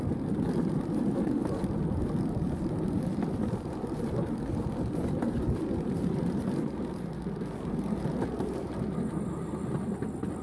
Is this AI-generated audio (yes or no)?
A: no